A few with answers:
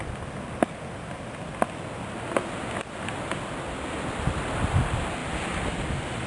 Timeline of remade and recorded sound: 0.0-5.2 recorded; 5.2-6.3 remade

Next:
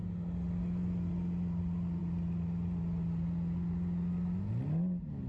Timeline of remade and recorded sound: 0.0-5.3 recorded

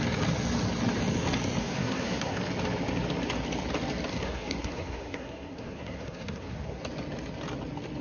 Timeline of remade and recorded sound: 0.0-1.6 recorded; 1.6-2.4 remade; 2.4-4.1 recorded; 4.1-6.8 remade; 6.8-8.0 recorded

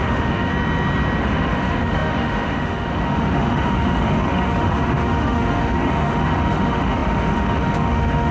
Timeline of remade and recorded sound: 0.0-0.5 remade; 0.5-1.2 recorded; 1.2-8.3 remade

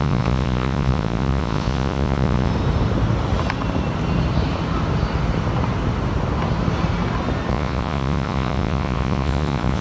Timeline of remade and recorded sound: 0.0-2.5 remade; 2.5-7.5 recorded; 7.5-9.8 remade

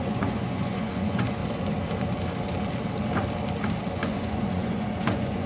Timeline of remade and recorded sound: 0.0-1.4 remade; 1.4-3.9 recorded; 3.9-5.5 remade

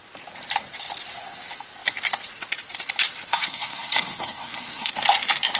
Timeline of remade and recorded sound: 0.0-3.3 recorded; 3.3-4.9 remade; 4.9-5.6 recorded